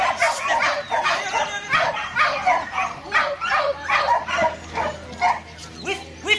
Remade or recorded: recorded